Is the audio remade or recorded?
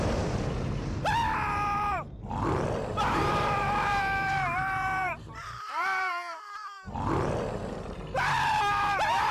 remade